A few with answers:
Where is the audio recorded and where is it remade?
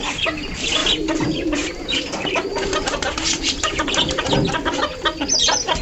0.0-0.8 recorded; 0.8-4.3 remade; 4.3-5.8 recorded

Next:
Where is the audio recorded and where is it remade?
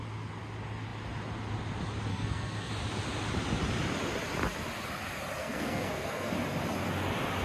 0.0-2.1 recorded; 2.1-2.7 remade; 2.7-5.4 recorded; 5.4-6.3 remade; 6.3-7.4 recorded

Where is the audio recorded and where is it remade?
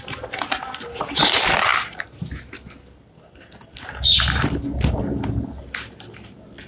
0.0-6.7 recorded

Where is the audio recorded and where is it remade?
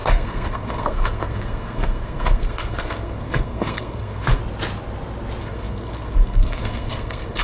0.0-4.4 remade; 4.4-5.4 recorded; 5.4-7.4 remade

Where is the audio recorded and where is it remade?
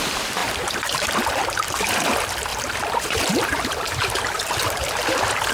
0.0-0.4 recorded; 0.4-1.8 remade; 1.8-2.5 recorded; 2.5-4.0 remade; 4.0-5.5 recorded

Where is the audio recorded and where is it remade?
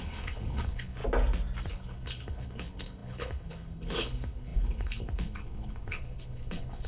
0.0-1.0 remade; 1.0-1.7 recorded; 1.7-6.9 remade